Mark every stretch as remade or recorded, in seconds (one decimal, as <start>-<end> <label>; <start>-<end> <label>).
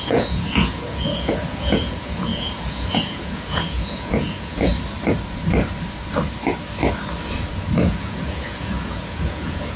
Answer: 0.0-4.7 remade; 4.7-7.8 recorded; 7.8-9.8 remade